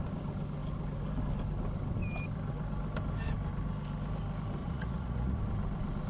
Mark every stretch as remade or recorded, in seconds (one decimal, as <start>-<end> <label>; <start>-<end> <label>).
0.0-4.6 recorded; 4.6-5.4 remade; 5.4-6.1 recorded